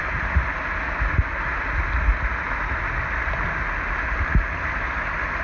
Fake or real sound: real